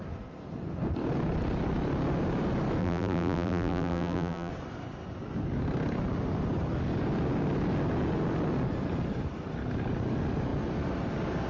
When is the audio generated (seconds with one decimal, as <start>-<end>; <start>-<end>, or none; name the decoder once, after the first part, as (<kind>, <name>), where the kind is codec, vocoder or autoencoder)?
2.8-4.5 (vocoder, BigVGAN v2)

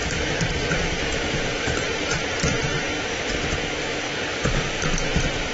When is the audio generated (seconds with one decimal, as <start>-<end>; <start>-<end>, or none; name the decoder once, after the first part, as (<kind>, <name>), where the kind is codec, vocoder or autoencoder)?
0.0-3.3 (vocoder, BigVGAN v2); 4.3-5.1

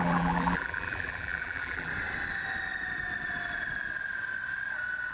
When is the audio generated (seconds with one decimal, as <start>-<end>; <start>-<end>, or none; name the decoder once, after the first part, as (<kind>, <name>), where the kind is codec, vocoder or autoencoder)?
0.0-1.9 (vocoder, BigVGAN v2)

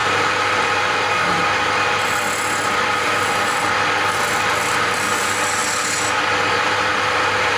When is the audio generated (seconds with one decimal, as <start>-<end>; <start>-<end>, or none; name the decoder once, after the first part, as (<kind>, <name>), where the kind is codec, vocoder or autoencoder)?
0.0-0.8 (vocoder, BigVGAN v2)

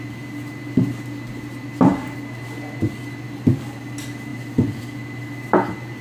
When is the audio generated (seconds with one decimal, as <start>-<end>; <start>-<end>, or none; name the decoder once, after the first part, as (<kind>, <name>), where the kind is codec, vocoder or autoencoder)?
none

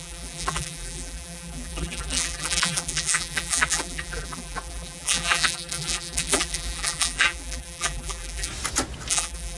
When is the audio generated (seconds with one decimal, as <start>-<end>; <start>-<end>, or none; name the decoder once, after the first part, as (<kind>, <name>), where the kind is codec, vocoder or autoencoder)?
0.0-8.5 (vocoder, BigVGAN v2); 9.1-9.6